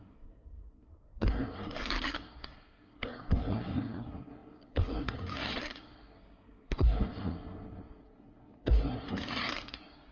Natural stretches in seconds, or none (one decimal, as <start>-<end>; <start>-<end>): none